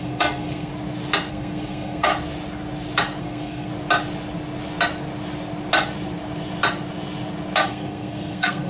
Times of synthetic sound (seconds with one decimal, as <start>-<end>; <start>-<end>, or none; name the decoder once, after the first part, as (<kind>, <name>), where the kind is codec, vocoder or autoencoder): 0.0-0.7 (codec, SNAC); 1.3-2.1; 3.2-3.7; 7.7-8.7